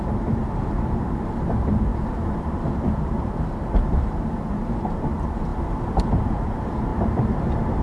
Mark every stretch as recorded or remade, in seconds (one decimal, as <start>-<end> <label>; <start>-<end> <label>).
0.0-7.8 remade